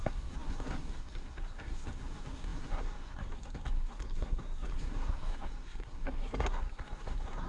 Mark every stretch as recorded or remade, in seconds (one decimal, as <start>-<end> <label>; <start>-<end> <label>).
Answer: 0.0-7.5 remade